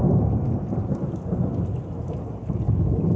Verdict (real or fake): real